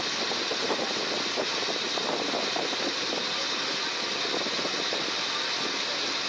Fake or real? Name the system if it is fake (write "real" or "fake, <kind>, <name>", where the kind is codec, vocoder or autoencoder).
real